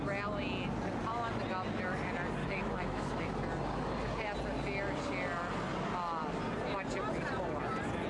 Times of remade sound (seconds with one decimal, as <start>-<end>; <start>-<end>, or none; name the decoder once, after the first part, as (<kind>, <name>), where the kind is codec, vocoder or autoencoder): 2.4-3.2 (autoencoder, DAC-VAE)